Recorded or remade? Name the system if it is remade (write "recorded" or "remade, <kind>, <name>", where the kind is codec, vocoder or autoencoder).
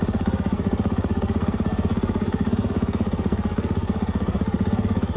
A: remade, codec, SNAC